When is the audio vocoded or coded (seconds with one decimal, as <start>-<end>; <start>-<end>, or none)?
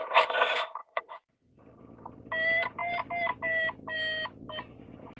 0.8-1.6